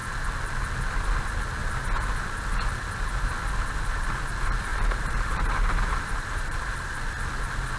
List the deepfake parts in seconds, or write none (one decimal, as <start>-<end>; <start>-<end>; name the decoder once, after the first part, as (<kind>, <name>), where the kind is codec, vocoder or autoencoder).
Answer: 4.7-6.9 (vocoder, BigVGAN v2)

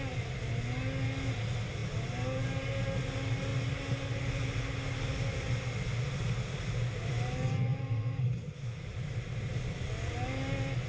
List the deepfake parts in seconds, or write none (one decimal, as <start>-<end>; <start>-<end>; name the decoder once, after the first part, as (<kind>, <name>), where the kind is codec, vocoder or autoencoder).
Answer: 7.7-9.6 (vocoder, BigVGAN v2)

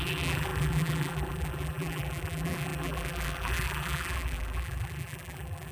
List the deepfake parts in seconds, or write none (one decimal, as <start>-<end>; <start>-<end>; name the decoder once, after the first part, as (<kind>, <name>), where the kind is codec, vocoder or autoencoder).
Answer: 0.0-5.7 (vocoder, BigVGAN v2)

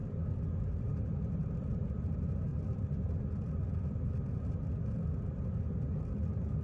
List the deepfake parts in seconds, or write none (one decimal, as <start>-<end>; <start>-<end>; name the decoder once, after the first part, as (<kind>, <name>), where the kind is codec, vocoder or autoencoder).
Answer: 0.9-2.1 (vocoder, BigVGAN v2); 2.5-4.3

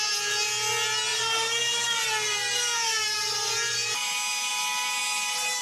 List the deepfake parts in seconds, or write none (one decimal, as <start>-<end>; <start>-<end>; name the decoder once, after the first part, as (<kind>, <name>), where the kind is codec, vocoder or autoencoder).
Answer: 1.1-4.5 (vocoder, BigVGAN v2)

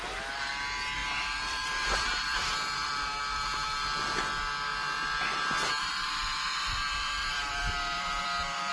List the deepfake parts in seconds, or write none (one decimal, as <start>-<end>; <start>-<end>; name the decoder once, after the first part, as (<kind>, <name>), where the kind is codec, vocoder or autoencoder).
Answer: 1.0-2.9 (vocoder, BigVGAN v2); 7.2-8.7

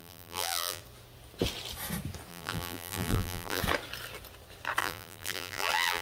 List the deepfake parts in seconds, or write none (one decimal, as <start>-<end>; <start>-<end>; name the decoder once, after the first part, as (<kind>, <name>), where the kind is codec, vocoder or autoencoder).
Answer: 0.0-0.8 (vocoder, BigVGAN v2); 2.3-3.6; 4.8-6.0

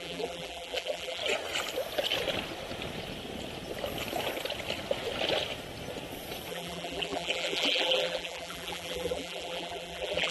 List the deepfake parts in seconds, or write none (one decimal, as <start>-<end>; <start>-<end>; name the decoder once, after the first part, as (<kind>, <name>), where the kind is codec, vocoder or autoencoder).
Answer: 0.0-1.2 (vocoder, BigVGAN v2); 6.5-10.3